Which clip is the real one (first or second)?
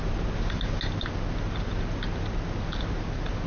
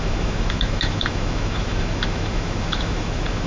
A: first